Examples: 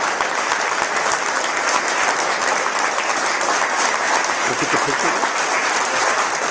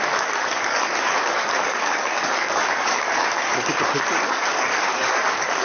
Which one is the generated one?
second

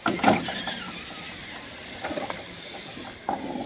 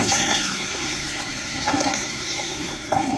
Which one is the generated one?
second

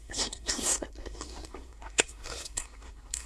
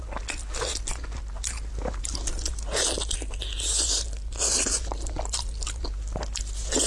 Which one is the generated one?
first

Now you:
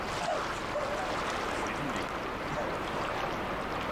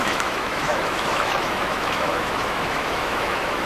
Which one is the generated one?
second